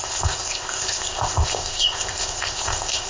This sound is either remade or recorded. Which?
remade